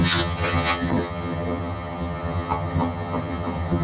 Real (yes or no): no